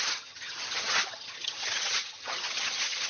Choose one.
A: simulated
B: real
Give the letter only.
A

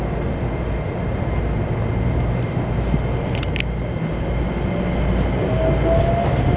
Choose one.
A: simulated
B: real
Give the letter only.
B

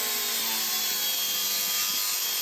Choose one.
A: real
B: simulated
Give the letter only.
A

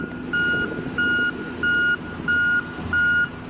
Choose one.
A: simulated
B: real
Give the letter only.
B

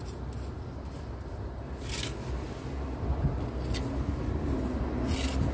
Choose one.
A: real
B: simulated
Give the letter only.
A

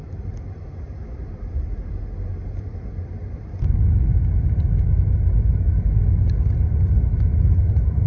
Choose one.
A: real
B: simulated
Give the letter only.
A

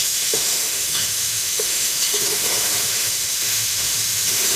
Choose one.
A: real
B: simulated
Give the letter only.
B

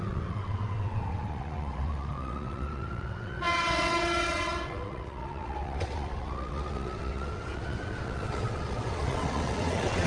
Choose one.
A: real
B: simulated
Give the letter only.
B